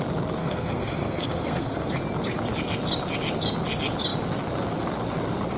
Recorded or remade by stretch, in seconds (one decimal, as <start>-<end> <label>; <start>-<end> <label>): 0.0-0.4 recorded; 0.4-1.9 remade; 1.9-5.6 recorded